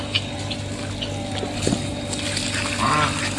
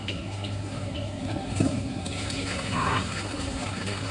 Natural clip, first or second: first